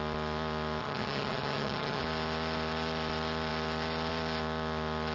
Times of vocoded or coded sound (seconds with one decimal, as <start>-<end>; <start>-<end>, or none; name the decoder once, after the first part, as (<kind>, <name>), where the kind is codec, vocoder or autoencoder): 0.8-2.0 (vocoder, HiFi-GAN)